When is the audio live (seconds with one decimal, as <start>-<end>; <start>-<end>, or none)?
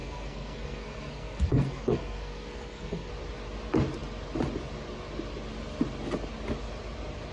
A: 3.1-7.3